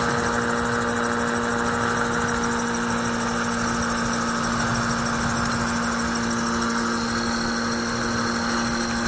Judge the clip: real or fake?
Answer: real